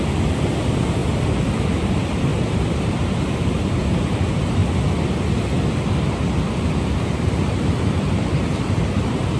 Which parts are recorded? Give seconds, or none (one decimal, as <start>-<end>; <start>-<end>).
1.0-1.9; 4.6-6.7